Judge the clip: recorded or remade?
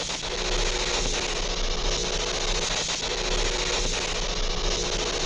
recorded